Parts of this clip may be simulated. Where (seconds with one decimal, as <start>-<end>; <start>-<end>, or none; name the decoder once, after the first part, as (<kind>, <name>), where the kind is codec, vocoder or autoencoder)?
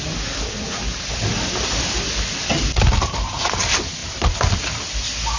none